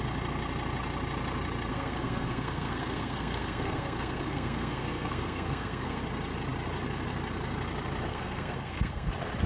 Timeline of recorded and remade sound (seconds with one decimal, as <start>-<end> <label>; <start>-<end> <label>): 0.0-1.7 recorded; 1.7-6.0 remade; 6.0-8.1 recorded; 8.1-9.1 remade; 9.1-9.5 recorded